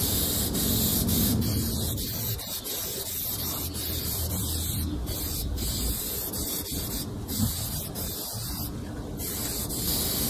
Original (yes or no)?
yes